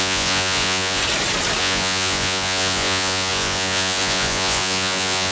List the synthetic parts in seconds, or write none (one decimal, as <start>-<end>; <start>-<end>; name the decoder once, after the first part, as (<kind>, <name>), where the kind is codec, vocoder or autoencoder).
0.0-1.0 (vocoder, Vocos); 1.6-5.3